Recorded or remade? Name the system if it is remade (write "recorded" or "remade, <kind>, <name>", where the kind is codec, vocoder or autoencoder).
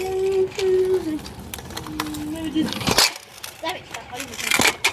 recorded